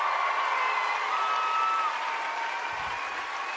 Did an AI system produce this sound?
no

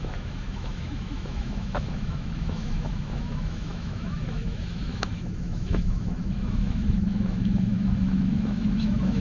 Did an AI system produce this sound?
yes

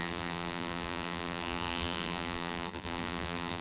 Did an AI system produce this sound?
yes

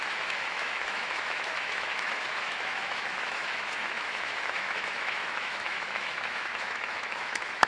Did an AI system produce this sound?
yes